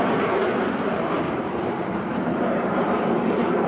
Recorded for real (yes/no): no